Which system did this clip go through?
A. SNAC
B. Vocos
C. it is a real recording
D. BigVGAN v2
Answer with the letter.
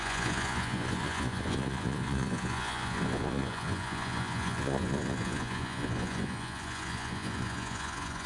B